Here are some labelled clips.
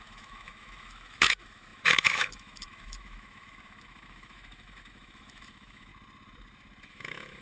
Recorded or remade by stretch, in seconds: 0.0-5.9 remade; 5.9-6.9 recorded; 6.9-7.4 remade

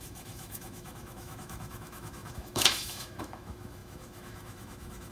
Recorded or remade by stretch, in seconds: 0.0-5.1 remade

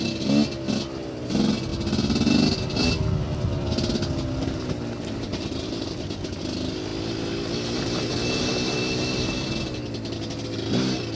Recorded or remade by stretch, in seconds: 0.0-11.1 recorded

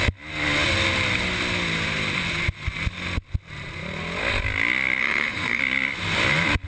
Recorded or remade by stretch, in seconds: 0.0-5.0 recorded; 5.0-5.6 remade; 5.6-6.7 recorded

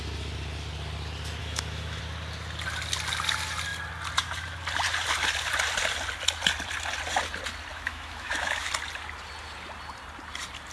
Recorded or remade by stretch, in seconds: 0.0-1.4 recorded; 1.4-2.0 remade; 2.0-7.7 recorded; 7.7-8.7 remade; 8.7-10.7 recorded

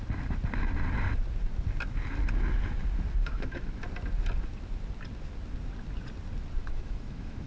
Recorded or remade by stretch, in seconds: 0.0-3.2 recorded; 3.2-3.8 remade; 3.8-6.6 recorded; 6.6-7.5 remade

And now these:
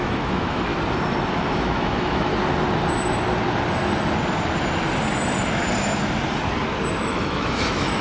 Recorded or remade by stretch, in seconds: 0.0-0.7 remade; 0.7-1.4 recorded; 1.4-2.3 remade; 2.3-7.0 recorded; 7.0-8.0 remade

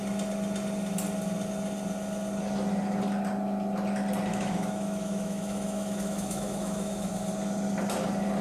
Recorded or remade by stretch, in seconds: 0.0-4.3 recorded; 4.3-7.1 remade; 7.1-8.4 recorded